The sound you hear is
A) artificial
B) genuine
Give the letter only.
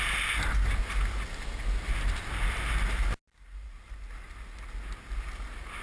B